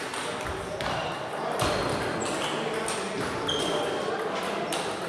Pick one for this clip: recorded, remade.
recorded